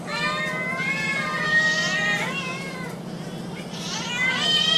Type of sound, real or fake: real